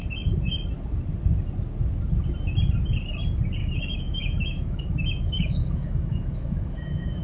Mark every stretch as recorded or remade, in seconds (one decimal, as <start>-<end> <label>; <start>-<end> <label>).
0.0-3.6 recorded; 3.6-7.2 remade

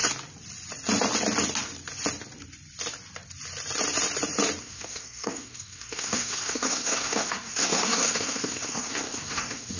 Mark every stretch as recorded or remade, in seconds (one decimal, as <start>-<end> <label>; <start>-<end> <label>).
0.0-4.6 recorded; 4.6-9.8 remade

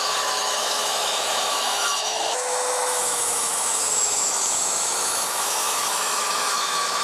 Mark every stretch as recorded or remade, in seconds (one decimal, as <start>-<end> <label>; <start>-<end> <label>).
0.0-7.0 remade

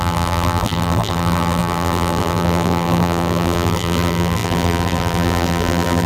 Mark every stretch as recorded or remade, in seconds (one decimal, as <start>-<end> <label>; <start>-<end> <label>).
0.0-6.1 remade

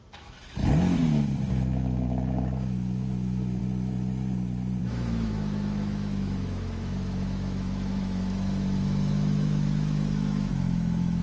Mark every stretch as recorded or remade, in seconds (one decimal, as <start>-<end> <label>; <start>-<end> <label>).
0.0-0.6 remade; 0.6-1.5 recorded; 1.5-3.6 remade; 3.6-4.8 recorded; 4.8-11.2 remade